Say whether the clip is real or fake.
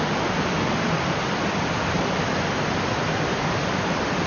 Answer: real